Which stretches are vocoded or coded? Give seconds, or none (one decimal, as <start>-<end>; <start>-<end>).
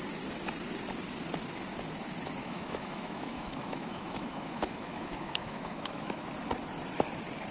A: 2.4-6.3